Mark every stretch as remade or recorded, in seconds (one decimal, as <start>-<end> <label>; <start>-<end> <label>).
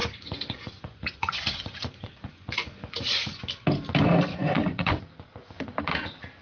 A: 0.0-3.4 remade; 3.4-4.3 recorded; 4.3-5.0 remade; 5.0-6.4 recorded